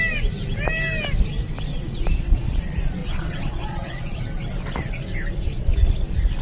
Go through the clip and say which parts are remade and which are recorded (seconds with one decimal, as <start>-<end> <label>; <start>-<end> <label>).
0.0-1.7 recorded; 1.7-2.6 remade; 2.6-3.0 recorded; 3.0-4.2 remade; 4.2-6.4 recorded